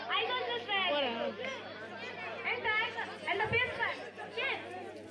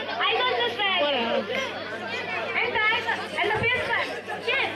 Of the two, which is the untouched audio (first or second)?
first